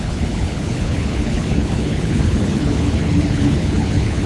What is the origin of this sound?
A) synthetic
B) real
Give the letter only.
A